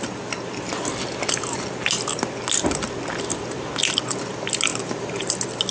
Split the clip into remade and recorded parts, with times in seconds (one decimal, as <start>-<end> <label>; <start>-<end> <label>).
0.0-4.7 recorded; 4.7-5.3 remade; 5.3-5.7 recorded